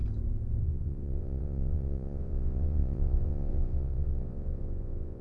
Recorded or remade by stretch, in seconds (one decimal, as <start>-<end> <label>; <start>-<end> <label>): 0.0-0.6 recorded; 0.6-5.2 remade